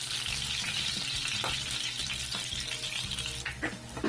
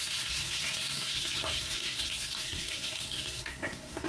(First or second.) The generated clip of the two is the second